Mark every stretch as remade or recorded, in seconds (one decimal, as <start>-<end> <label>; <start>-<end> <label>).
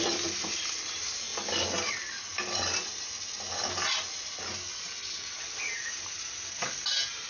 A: 0.0-7.3 recorded